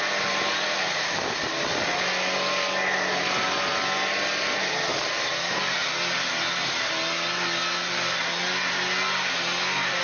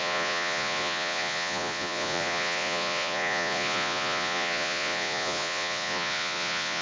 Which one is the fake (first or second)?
second